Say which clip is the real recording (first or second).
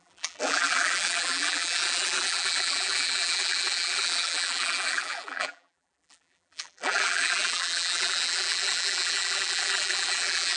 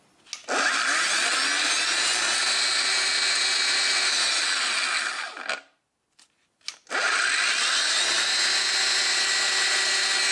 second